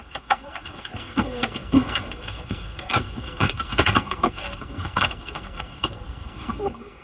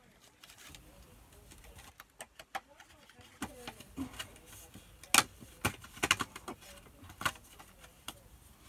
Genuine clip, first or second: second